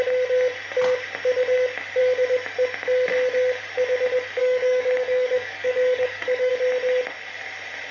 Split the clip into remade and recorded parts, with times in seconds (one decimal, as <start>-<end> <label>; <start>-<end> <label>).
0.0-4.4 recorded; 4.4-6.5 remade; 6.5-7.9 recorded